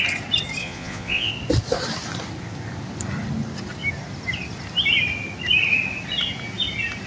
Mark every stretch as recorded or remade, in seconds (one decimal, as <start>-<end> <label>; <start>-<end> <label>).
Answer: 0.0-0.6 recorded; 0.6-1.3 remade; 1.3-7.1 recorded